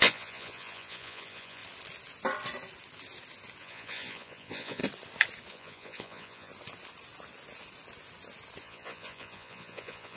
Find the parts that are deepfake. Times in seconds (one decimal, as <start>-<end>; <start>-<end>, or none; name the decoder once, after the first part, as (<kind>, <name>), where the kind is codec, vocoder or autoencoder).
0.0-1.6 (vocoder, Vocos); 3.6-4.8; 5.5-6.5; 8.6-10.2